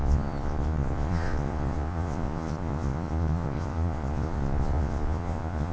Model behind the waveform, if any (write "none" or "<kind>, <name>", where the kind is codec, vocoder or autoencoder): vocoder, Vocos